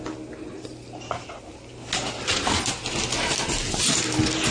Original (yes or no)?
yes